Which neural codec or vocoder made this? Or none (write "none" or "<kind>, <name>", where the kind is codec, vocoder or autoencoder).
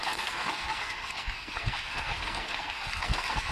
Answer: codec, SNAC